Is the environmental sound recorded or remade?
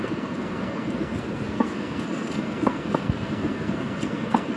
remade